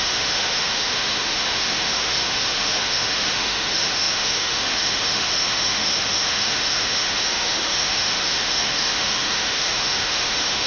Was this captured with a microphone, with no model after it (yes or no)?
no